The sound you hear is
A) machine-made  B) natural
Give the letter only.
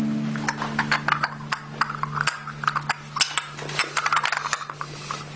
B